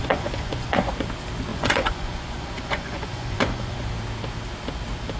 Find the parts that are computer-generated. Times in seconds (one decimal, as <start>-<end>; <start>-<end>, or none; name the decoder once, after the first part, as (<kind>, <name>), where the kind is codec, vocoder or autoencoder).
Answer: 0.0-0.9 (vocoder, Vocos); 1.5-3.9

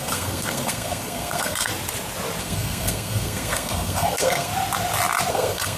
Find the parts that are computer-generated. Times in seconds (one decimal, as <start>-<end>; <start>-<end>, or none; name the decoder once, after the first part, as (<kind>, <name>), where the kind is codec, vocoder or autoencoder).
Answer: 0.0-1.7 (codec, SNAC); 2.4-4.5; 5.3-5.8